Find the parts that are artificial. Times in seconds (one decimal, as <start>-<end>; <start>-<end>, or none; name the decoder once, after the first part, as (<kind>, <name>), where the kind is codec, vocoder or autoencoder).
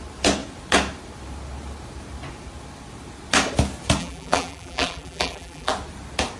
4.0-5.7 (vocoder, BigVGAN v2)